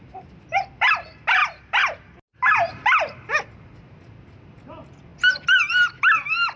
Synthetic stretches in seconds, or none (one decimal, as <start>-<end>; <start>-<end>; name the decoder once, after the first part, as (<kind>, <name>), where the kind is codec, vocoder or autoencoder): 0.0-1.4 (vocoder, BigVGAN v2); 2.7-5.1; 5.7-6.6